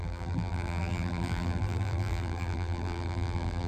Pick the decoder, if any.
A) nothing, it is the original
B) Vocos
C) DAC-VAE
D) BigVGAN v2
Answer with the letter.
D